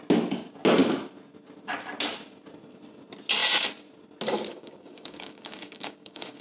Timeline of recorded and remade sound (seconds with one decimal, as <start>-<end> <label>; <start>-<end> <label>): 0.0-4.5 recorded; 4.5-6.4 remade